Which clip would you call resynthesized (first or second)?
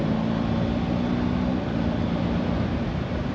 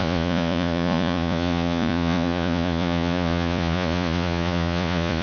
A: second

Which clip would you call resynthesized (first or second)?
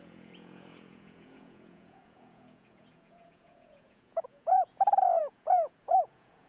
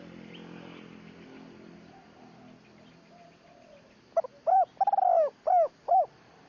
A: first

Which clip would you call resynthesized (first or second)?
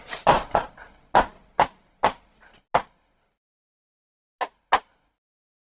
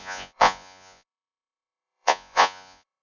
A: second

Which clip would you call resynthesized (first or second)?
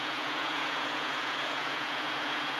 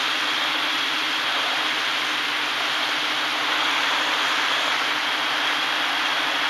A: first